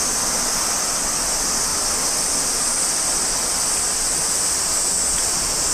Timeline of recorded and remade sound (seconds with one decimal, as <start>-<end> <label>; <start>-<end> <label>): 0.0-5.7 recorded